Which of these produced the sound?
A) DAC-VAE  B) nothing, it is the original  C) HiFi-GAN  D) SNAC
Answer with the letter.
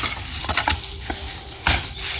B